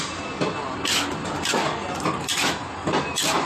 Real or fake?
real